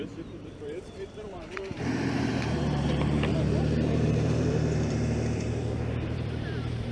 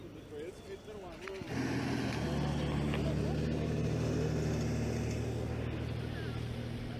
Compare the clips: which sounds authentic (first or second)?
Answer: second